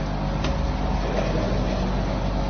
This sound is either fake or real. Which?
real